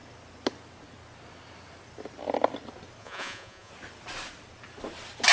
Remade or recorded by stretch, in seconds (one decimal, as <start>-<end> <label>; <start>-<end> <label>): 0.0-3.0 recorded; 3.0-3.7 remade; 3.7-5.3 recorded